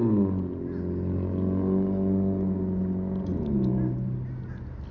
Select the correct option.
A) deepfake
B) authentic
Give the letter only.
B